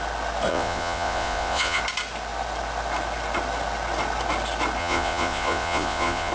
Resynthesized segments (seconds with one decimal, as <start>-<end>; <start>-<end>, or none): 0.5-1.8; 4.8-6.3